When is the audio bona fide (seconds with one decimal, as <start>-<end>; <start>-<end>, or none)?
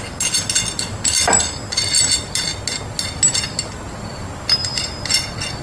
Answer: 0.0-5.6